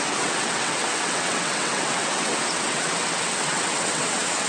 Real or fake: fake